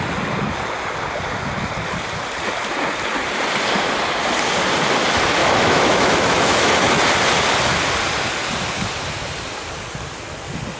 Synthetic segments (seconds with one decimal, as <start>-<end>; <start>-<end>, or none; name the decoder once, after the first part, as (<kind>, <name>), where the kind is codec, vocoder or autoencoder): 5.4-6.7 (autoencoder, DAC-VAE)